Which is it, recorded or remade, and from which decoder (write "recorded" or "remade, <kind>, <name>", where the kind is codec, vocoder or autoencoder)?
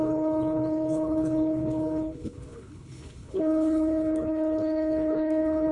remade, codec, HILCodec